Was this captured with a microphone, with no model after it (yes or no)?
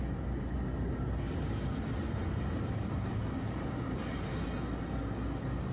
yes